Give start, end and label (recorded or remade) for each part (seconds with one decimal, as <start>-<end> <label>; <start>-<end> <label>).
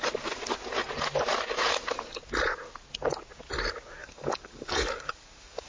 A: 0.0-4.0 recorded; 4.0-5.7 remade